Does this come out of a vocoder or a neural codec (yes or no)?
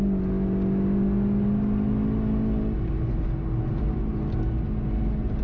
no